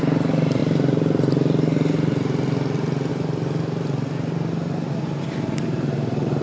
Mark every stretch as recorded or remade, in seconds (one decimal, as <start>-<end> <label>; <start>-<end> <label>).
0.0-6.4 recorded